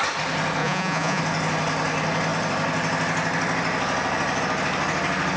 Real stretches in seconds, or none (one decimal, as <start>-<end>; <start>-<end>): 0.0-0.6; 1.2-5.4